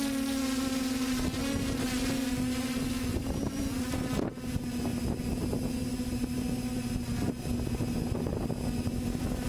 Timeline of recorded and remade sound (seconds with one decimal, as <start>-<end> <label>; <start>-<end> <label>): 0.0-3.1 recorded; 3.1-3.9 remade; 3.9-9.5 recorded